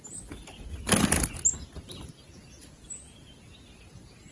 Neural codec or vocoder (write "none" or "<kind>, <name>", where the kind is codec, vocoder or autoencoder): none